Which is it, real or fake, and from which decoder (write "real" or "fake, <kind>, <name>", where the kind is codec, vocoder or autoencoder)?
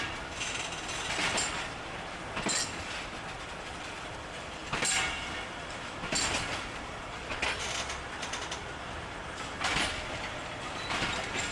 fake, vocoder, BigVGAN v2